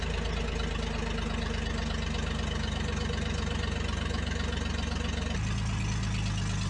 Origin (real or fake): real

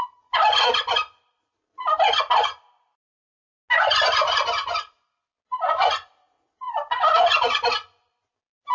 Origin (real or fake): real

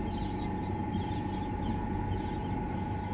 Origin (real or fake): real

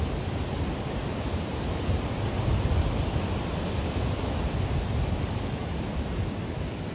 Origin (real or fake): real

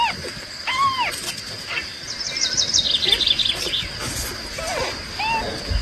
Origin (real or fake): real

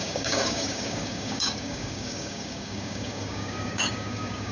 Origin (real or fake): fake